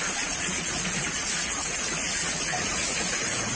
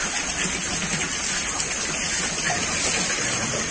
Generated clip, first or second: first